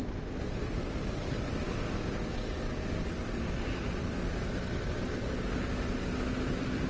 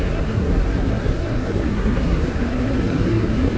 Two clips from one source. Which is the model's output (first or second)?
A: second